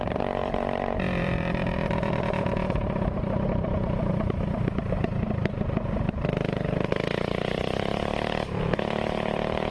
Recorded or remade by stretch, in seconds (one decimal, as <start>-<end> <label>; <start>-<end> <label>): 0.0-9.7 remade